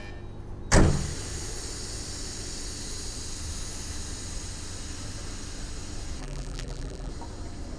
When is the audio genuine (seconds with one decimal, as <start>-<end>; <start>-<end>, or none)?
0.0-6.2; 7.1-7.8